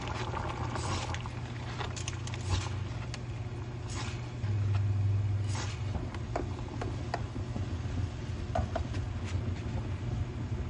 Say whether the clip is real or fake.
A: real